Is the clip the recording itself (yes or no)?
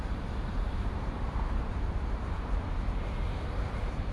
no